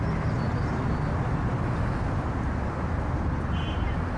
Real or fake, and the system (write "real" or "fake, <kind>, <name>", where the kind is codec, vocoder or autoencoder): real